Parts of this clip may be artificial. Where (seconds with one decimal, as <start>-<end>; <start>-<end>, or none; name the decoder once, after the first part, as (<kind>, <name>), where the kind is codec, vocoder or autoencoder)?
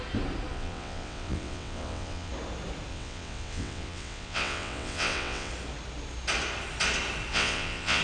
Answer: 0.5-2.3 (vocoder, WaveNeXt); 2.9-5.5; 7.3-8.0